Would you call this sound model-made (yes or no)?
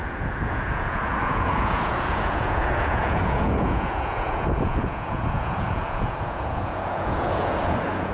yes